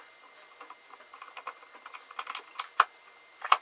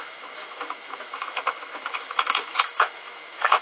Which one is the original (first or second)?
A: first